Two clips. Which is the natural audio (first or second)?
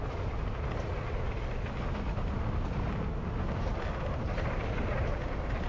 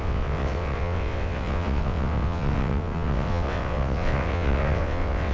first